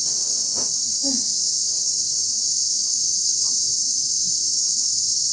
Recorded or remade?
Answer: remade